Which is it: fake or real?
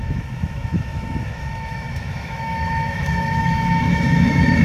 fake